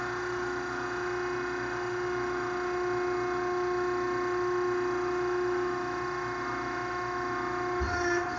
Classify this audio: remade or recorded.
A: recorded